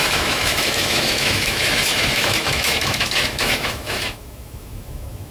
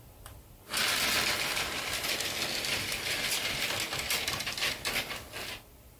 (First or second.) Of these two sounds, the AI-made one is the first